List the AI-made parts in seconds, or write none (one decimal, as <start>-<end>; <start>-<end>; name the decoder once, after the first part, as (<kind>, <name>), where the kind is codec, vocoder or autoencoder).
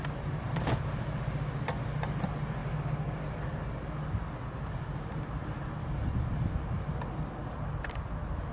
none